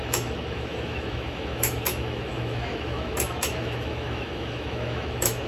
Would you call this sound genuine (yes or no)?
no